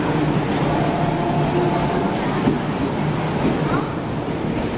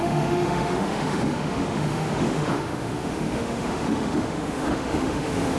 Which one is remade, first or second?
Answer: second